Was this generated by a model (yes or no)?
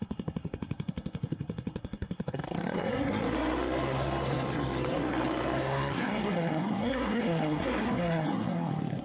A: yes